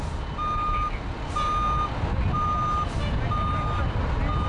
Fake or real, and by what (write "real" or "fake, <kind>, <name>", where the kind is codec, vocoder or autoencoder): real